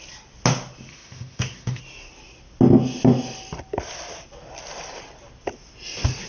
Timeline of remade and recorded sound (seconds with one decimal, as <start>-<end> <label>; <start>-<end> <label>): 0.0-0.9 recorded; 0.9-1.8 remade; 1.8-6.3 recorded